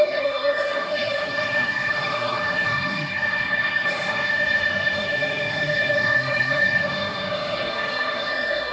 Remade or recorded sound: remade